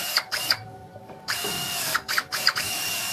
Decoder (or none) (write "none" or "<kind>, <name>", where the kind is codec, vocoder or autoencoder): codec, DAC